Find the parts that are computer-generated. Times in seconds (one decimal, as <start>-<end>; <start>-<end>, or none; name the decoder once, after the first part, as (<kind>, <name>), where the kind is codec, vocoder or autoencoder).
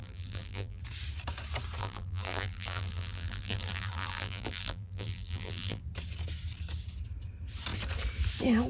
0.0-0.8 (vocoder, BigVGAN v2); 1.8-5.8